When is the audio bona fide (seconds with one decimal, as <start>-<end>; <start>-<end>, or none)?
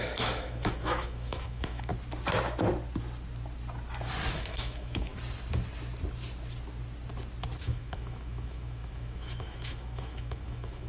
1.9-4.3; 5.1-7.6